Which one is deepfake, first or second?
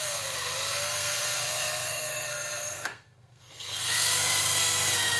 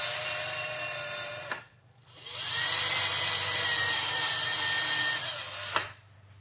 first